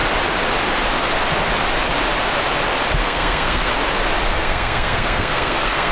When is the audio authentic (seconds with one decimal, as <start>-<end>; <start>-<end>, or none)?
0.0-3.0; 3.7-4.3